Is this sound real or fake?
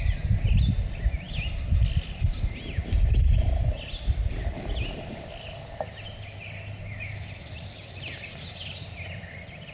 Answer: real